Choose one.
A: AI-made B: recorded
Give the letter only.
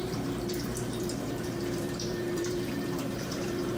A